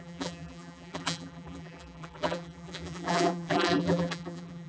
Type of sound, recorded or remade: remade